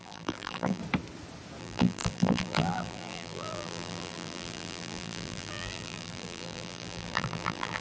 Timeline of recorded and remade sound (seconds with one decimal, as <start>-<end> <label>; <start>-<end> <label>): 0.0-0.8 remade; 0.8-1.6 recorded; 1.6-7.8 remade